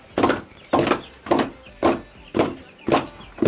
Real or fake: real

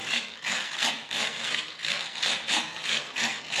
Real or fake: fake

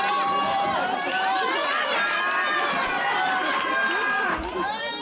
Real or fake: fake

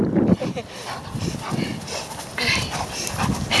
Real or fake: fake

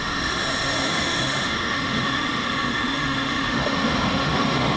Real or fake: fake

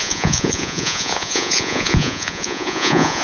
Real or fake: fake